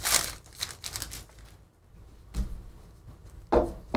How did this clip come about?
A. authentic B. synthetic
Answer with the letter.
A